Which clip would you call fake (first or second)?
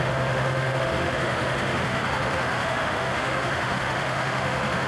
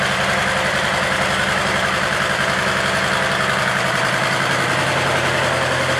first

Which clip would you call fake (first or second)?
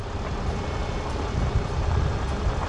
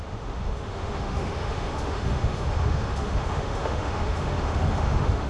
second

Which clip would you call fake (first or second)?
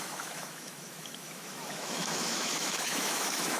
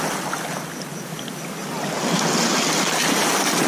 first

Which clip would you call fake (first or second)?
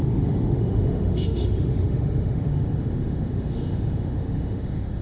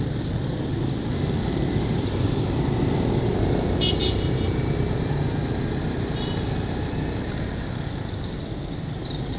first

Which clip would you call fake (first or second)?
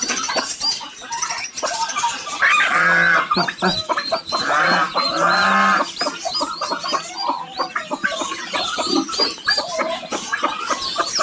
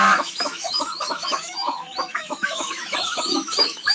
second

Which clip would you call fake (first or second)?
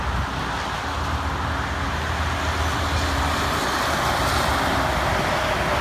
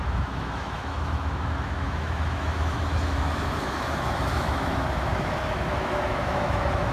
second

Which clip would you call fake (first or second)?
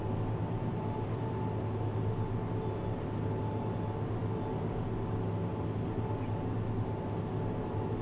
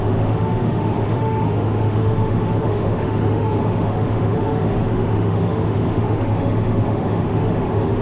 second